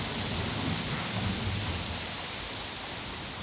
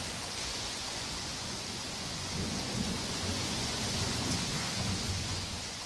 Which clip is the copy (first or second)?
second